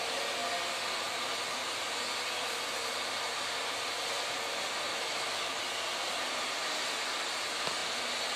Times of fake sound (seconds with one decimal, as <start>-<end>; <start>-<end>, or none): 4.9-5.6